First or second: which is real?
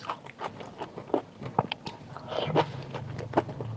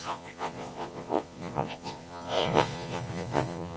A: first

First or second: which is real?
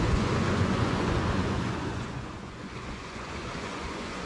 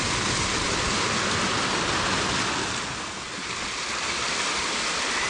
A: second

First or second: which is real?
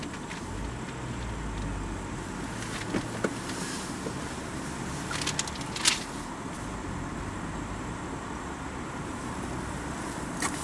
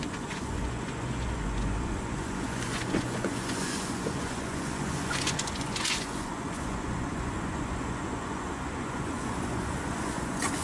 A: first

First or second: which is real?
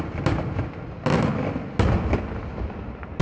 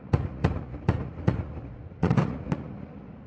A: first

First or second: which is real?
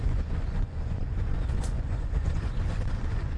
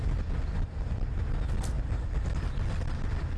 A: second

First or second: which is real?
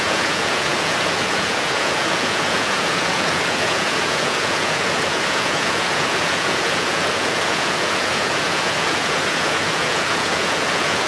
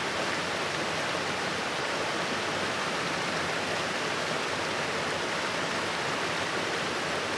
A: second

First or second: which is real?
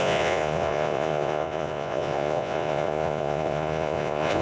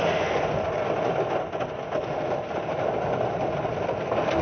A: second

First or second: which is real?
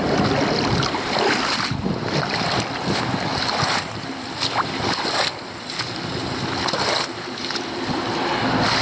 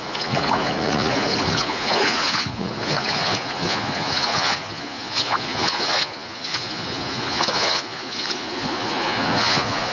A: first